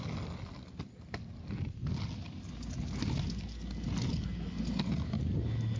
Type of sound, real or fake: real